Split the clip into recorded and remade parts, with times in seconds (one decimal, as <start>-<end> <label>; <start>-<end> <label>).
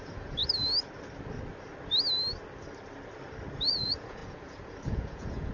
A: 0.0-0.4 remade; 0.4-3.7 recorded; 3.7-5.5 remade